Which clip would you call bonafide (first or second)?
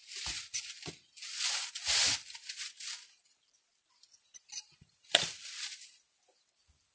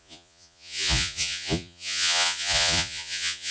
first